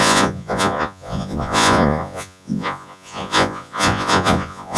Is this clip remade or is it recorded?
remade